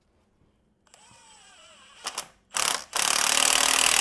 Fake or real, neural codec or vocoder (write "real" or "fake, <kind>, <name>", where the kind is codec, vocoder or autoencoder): real